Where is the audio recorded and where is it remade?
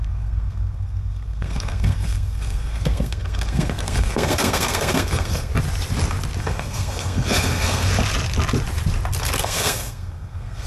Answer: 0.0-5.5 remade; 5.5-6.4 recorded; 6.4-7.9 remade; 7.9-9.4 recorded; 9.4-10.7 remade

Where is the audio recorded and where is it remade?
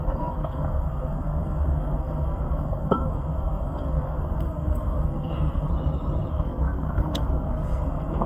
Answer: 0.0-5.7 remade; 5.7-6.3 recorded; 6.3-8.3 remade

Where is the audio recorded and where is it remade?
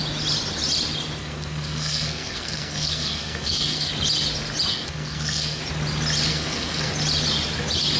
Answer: 0.0-1.2 recorded; 1.2-3.9 remade; 3.9-4.7 recorded; 4.7-5.6 remade; 5.6-6.3 recorded; 6.3-6.9 remade; 6.9-8.0 recorded